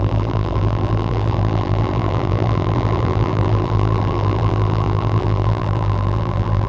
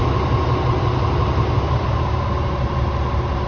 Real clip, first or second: second